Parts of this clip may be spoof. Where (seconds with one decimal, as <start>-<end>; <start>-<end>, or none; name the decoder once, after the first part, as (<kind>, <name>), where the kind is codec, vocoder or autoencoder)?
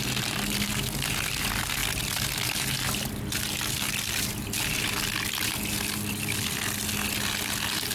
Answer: none